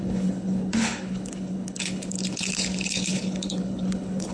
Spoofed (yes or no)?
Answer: yes